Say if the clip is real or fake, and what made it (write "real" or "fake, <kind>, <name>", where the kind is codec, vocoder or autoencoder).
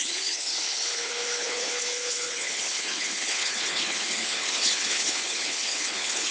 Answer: fake, codec, HILCodec